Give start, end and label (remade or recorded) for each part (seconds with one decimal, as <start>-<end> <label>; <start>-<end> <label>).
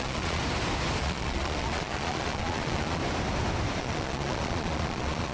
0.0-0.4 remade; 0.4-1.0 recorded; 1.0-3.0 remade; 3.0-3.8 recorded; 3.8-5.3 remade